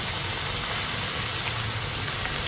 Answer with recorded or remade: recorded